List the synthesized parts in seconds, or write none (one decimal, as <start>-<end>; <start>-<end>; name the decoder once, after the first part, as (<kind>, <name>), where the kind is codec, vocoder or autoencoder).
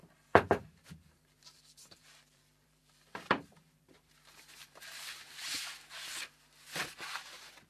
0.0-3.9 (vocoder, BigVGAN v2); 4.6-5.4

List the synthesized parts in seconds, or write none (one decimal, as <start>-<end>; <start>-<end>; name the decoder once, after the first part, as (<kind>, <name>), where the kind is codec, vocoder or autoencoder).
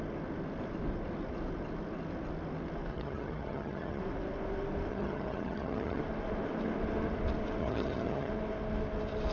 2.9-4.0 (vocoder, HiFi-GAN); 4.9-6.0; 7.6-8.3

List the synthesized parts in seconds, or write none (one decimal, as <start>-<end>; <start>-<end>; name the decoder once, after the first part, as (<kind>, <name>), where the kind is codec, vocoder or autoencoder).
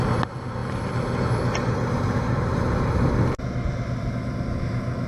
none